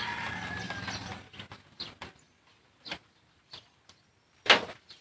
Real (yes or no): yes